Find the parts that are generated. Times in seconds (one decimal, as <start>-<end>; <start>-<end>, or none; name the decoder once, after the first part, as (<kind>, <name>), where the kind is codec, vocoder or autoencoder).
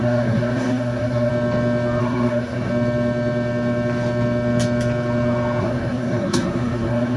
0.0-1.3 (codec, SNAC); 2.0-2.7; 5.6-7.2